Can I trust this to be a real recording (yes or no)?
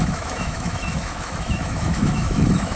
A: no